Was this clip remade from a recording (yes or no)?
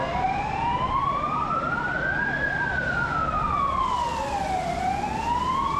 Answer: no